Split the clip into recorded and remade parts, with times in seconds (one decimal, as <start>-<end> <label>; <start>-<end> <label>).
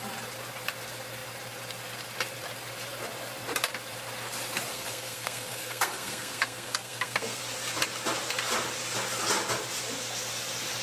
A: 0.0-4.7 recorded; 4.7-7.4 remade; 7.4-10.8 recorded